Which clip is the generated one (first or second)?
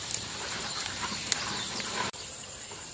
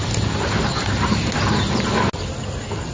first